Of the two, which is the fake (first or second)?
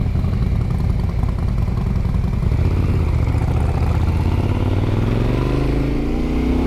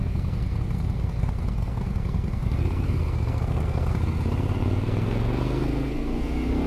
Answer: second